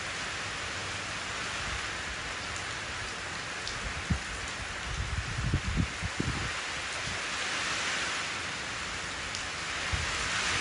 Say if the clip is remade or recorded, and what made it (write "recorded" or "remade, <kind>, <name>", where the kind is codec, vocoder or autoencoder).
recorded